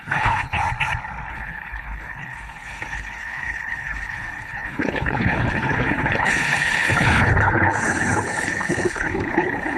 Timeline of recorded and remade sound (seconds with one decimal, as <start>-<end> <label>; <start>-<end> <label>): 0.0-0.6 remade; 0.6-1.3 recorded; 1.3-9.8 remade